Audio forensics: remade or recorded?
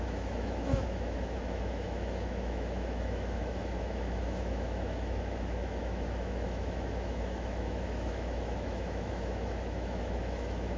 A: remade